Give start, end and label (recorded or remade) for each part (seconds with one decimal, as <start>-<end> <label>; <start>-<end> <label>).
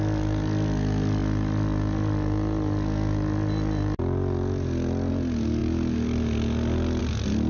0.0-7.5 recorded